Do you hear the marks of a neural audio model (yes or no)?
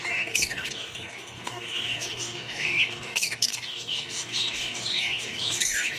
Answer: yes